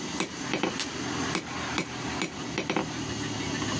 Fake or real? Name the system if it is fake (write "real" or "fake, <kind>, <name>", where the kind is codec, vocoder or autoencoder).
real